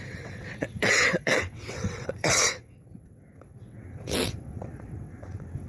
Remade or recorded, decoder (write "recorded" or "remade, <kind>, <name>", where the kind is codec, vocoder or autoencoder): remade, vocoder, WaveNeXt